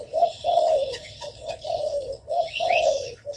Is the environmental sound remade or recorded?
remade